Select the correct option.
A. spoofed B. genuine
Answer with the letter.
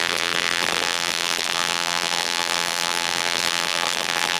A